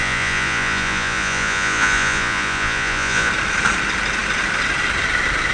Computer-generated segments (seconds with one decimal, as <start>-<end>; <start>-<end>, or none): 0.0-3.3